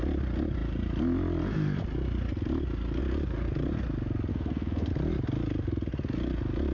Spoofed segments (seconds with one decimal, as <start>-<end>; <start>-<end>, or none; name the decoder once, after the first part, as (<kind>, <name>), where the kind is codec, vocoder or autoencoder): 4.3-4.9 (codec, SNAC)